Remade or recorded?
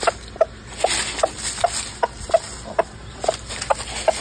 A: recorded